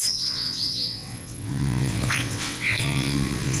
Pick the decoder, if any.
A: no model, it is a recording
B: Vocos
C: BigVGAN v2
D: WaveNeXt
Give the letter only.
D